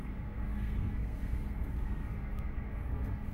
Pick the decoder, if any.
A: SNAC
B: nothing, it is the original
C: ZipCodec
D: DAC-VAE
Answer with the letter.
A